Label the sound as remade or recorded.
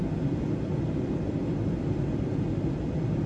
recorded